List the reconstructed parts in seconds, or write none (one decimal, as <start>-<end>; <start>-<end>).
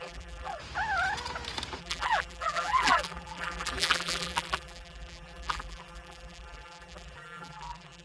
0.0-0.6; 1.8-8.0